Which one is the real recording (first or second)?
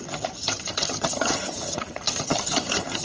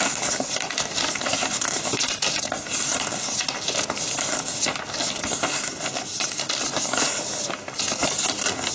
second